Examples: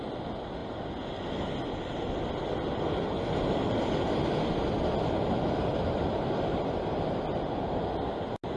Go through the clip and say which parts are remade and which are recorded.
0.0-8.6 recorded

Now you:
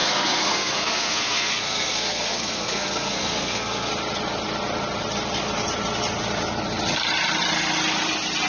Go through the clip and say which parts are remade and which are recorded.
0.0-3.9 remade; 3.9-8.5 recorded

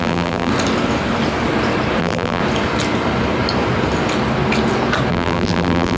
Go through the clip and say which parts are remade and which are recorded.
0.0-0.5 remade; 0.5-2.0 recorded; 2.0-2.4 remade; 2.4-5.1 recorded; 5.1-6.0 remade

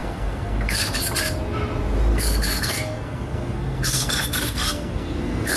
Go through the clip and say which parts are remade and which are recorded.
0.0-1.0 remade; 1.0-2.1 recorded; 2.1-5.6 remade

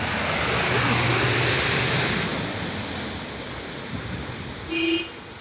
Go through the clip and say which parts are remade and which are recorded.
0.0-5.4 recorded

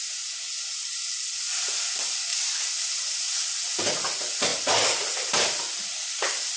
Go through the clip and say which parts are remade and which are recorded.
0.0-2.3 recorded; 2.3-3.6 remade; 3.6-6.6 recorded

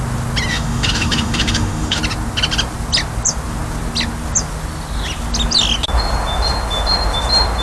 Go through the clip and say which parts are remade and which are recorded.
0.0-0.5 recorded; 0.5-2.0 remade; 2.0-7.6 recorded

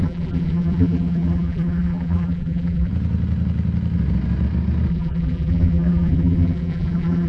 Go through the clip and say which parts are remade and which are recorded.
0.0-2.9 remade; 2.9-4.9 recorded; 4.9-7.3 remade